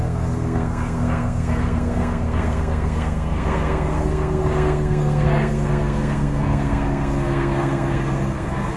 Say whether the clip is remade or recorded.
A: remade